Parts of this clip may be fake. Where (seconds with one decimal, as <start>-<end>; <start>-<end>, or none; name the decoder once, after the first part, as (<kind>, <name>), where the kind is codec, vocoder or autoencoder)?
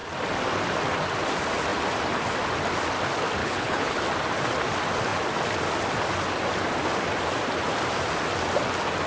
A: 3.4-4.0 (codec, HILCodec)